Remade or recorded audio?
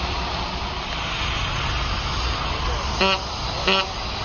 recorded